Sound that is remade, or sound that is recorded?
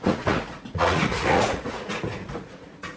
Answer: remade